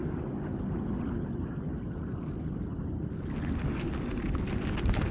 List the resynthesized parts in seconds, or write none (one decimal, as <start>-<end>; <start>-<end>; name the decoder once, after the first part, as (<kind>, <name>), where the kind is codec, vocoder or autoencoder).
none